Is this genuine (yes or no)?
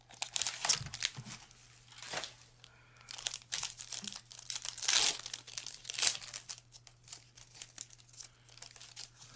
yes